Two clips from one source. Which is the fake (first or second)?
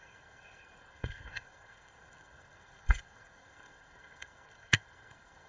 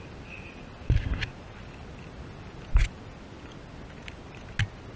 first